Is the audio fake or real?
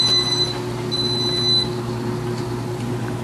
real